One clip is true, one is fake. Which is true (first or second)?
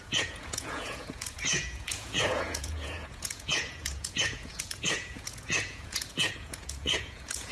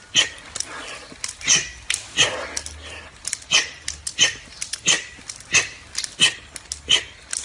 second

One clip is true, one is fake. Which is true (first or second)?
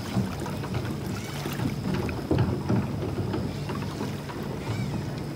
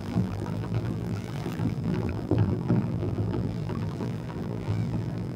first